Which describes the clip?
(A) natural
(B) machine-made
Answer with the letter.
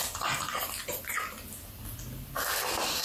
A